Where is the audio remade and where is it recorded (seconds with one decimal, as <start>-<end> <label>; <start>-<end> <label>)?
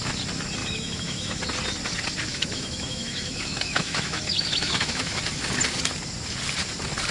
0.0-0.6 recorded; 0.6-1.4 remade; 1.4-2.3 recorded; 2.3-5.2 remade; 5.2-7.1 recorded